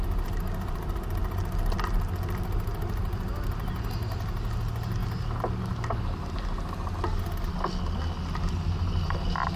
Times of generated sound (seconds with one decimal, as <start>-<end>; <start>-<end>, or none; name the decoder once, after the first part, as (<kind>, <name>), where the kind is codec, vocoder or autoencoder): none

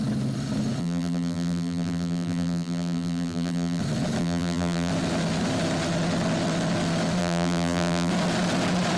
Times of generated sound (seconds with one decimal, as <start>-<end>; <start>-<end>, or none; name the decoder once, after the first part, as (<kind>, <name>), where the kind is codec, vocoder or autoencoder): 0.8-3.8 (vocoder, BigVGAN v2); 4.2-4.9; 7.2-8.1

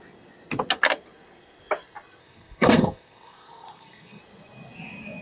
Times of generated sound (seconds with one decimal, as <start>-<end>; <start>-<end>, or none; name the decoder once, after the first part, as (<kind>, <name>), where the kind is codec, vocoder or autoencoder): 2.2-4.2 (codec, SNAC)

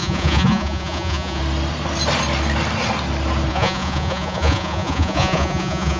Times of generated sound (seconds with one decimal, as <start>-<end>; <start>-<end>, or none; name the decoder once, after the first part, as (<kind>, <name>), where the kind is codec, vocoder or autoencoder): 0.0-1.4 (vocoder, Vocos); 3.5-6.0

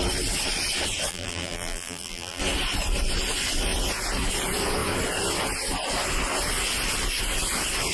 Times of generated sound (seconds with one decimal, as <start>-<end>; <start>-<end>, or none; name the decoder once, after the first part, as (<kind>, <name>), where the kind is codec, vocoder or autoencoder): 1.1-2.4 (vocoder, BigVGAN v2)

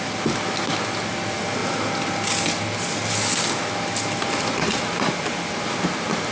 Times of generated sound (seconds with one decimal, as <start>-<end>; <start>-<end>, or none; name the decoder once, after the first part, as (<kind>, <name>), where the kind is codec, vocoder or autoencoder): none

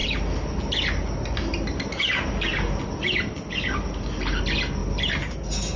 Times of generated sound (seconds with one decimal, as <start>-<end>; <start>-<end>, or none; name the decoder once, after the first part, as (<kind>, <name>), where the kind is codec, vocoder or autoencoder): none

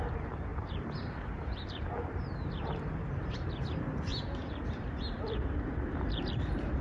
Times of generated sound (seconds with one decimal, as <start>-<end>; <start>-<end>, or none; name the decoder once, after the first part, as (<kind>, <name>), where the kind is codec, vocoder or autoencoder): 0.5-2.8 (vocoder, BigVGAN v2); 4.1-6.8